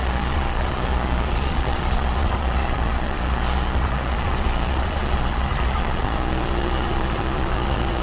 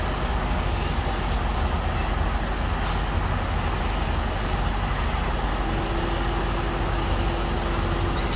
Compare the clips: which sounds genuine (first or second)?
second